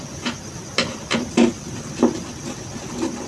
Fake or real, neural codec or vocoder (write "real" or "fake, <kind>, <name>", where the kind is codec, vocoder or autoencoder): real